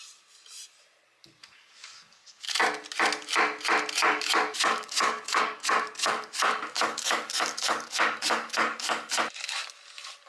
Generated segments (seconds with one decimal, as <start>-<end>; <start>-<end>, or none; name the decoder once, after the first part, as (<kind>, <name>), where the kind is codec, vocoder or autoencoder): 1.4-2.6 (codec, DAC); 4.0-9.1